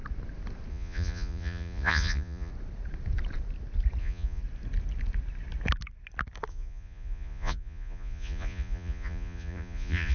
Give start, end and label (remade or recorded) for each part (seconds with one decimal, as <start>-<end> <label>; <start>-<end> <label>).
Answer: 0.0-0.7 recorded; 0.7-2.5 remade; 2.5-4.0 recorded; 4.0-4.4 remade; 4.4-6.5 recorded; 6.5-10.1 remade

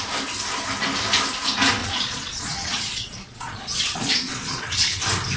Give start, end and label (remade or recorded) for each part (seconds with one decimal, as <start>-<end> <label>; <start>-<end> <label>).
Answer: 0.0-1.8 recorded; 1.8-5.0 remade; 5.0-5.4 recorded

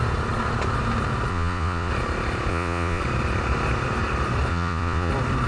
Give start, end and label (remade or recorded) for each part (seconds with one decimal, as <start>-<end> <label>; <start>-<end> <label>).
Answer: 0.0-1.3 recorded; 1.3-1.9 remade; 1.9-2.5 recorded; 2.5-3.0 remade; 3.0-4.5 recorded; 4.5-5.1 remade; 5.1-5.5 recorded

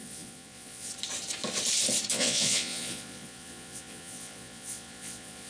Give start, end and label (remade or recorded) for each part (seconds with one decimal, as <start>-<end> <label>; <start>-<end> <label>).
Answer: 0.0-0.9 remade; 0.9-2.1 recorded; 2.1-5.5 remade

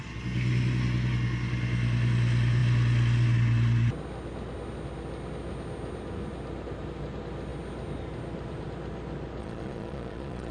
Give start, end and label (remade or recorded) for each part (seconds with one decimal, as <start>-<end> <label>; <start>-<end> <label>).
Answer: 0.0-9.4 recorded; 9.4-10.5 remade

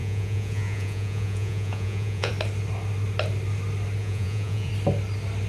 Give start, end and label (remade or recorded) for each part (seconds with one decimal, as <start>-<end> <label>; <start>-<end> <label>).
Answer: 0.0-2.3 remade; 2.3-4.0 recorded; 4.0-4.7 remade; 4.7-5.5 recorded